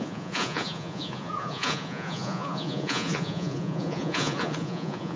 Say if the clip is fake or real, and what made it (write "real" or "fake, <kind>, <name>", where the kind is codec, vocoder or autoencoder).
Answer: fake, vocoder, Vocos